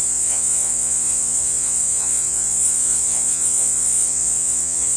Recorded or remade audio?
remade